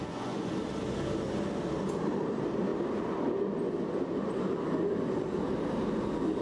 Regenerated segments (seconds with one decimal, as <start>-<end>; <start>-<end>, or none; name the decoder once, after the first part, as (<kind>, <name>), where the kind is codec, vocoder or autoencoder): 0.0-0.5 (vocoder, Vocos)